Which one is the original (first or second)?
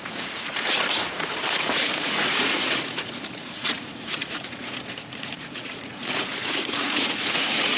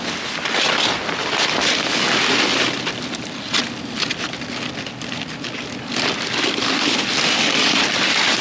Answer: second